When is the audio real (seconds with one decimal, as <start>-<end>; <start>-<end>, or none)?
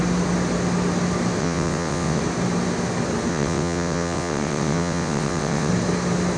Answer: 0.0-1.4; 2.2-3.3; 5.7-6.4